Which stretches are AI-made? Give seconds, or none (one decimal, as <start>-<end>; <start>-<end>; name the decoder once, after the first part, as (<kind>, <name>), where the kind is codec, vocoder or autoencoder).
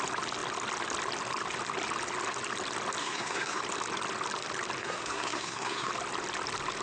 3.0-3.6 (codec, SNAC); 4.8-5.9